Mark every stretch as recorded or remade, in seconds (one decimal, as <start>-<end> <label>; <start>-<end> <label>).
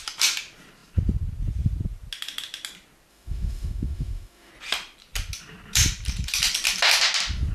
0.0-3.1 recorded; 3.1-4.5 remade; 4.5-7.5 recorded